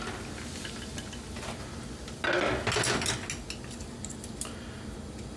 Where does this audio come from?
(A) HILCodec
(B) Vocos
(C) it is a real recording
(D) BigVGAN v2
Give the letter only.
C